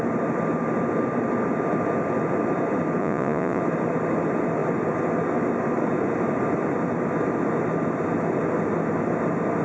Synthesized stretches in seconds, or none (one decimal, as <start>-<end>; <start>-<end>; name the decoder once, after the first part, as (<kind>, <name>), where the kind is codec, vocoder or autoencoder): 3.0-3.6 (vocoder, Vocos)